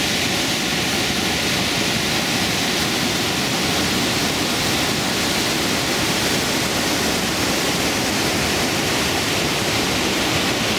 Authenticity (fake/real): real